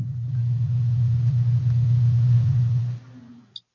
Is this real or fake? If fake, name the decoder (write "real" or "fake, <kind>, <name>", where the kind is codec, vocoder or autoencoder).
real